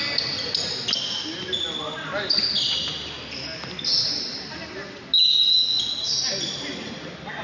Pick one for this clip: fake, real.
real